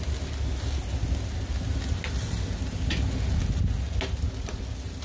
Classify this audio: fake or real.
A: real